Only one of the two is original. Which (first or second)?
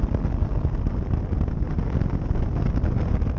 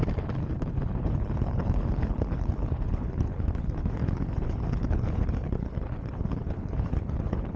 first